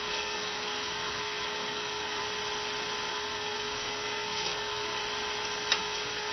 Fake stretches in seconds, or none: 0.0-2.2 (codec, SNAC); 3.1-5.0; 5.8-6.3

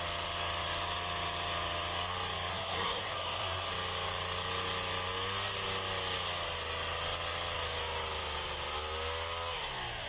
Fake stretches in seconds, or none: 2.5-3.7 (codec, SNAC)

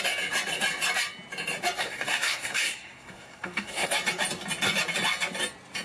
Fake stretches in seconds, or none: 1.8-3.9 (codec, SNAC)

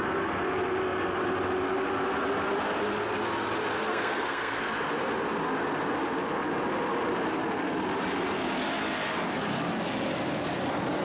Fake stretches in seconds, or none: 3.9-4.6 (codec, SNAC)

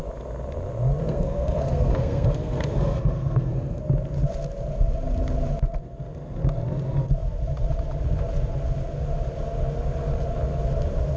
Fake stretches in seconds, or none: 1.0-3.8 (codec, SNAC)

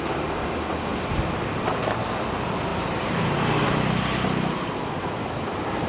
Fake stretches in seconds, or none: none